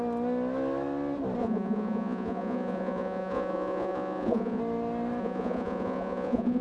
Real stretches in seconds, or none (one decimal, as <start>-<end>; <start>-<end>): 0.0-1.4; 4.6-5.2